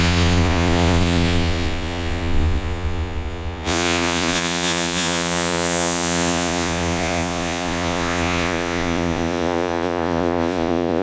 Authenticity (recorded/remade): remade